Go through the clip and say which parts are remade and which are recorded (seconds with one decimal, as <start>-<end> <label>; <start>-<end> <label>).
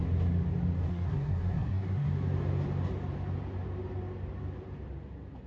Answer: 0.0-0.9 recorded; 0.9-2.1 remade; 2.1-5.5 recorded